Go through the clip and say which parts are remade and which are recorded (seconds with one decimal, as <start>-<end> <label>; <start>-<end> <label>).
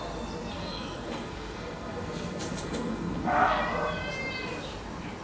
0.0-0.5 recorded; 0.5-3.6 remade; 3.6-5.2 recorded